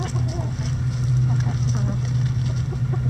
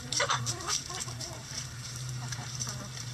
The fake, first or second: second